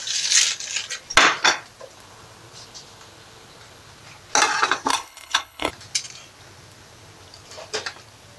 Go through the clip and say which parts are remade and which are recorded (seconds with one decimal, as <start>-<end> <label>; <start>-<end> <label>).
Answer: 0.0-4.9 recorded; 4.9-5.7 remade; 5.7-8.4 recorded